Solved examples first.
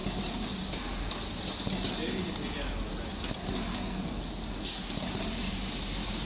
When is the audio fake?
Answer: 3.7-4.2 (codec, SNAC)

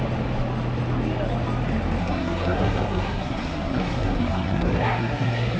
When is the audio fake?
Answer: 2.0-5.6 (codec, SNAC)

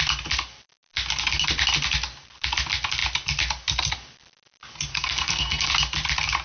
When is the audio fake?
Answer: 4.9-5.7 (codec, SNAC)